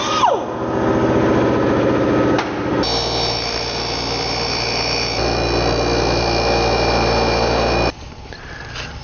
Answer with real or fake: real